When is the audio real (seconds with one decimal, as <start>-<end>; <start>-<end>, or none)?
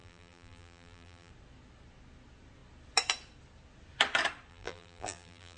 1.3-4.5